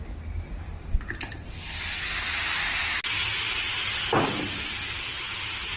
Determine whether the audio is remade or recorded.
recorded